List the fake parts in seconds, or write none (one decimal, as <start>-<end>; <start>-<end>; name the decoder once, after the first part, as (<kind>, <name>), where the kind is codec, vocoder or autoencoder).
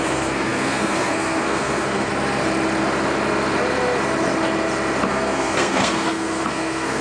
0.0-2.1 (codec, SNAC); 5.1-7.0